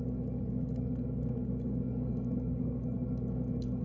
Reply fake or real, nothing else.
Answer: fake